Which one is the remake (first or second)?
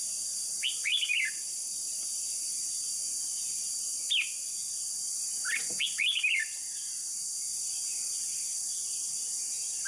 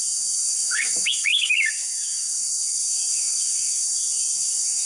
second